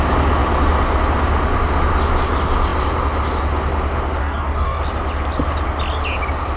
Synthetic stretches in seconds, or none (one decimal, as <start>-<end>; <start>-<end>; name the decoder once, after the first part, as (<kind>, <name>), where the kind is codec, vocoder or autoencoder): 4.2-4.8 (codec, DAC)